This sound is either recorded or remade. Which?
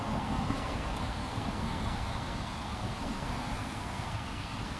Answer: remade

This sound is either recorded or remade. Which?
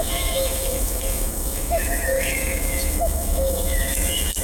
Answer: remade